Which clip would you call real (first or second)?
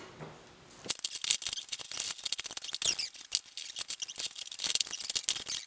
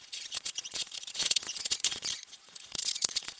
first